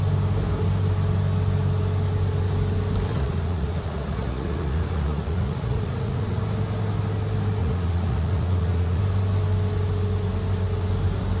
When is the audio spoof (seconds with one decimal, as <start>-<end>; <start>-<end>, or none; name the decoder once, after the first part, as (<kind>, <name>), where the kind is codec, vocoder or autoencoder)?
3.1-6.4 (vocoder, Vocos); 7.6-9.0